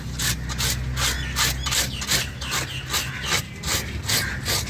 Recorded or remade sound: recorded